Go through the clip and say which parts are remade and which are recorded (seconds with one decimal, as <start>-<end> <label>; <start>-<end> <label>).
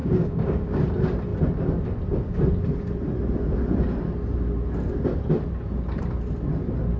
0.0-0.8 remade; 0.8-7.0 recorded